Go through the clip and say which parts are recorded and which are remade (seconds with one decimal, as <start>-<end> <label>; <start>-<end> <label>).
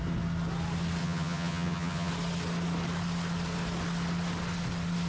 0.0-1.0 recorded; 1.0-2.1 remade; 2.1-5.1 recorded